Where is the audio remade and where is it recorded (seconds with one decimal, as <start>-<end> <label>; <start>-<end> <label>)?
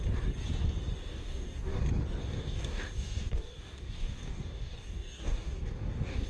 0.0-1.1 recorded; 1.1-1.8 remade; 1.8-2.2 recorded; 2.2-6.3 remade